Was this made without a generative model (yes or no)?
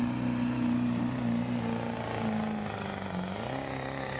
yes